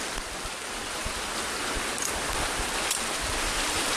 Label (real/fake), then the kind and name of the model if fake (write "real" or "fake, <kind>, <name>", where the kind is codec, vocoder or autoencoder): real